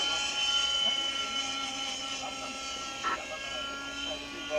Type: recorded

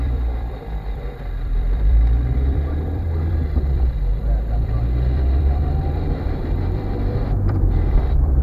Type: remade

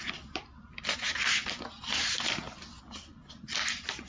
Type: recorded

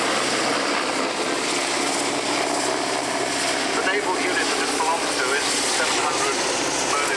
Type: recorded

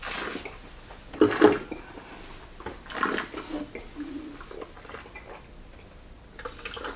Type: recorded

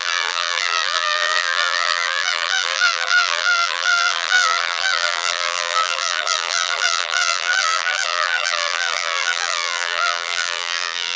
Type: remade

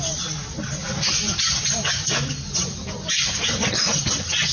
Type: recorded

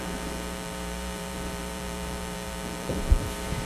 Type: remade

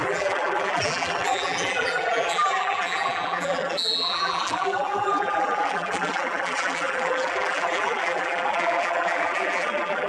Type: remade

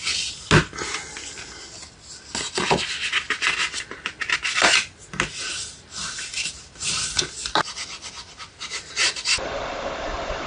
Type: recorded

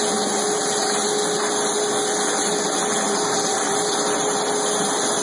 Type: recorded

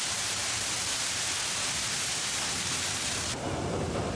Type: remade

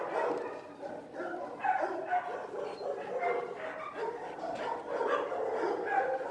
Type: recorded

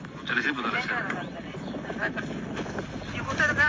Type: recorded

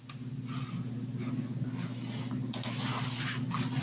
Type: recorded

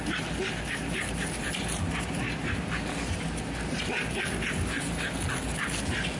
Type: remade